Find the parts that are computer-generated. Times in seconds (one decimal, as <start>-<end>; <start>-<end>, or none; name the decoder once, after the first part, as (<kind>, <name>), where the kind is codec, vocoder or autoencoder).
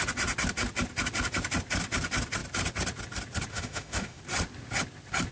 3.5-4.2 (autoencoder, DAC-VAE)